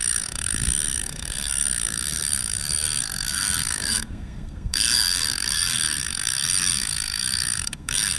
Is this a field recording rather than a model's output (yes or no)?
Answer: no